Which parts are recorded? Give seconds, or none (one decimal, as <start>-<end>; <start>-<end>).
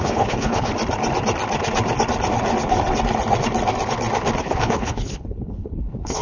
0.7-4.4